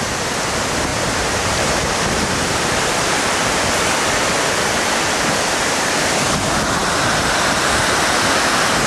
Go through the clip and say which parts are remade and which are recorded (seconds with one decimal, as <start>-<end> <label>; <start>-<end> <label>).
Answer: 0.0-0.9 recorded; 0.9-5.9 remade; 5.9-6.8 recorded; 6.8-7.8 remade; 7.8-8.9 recorded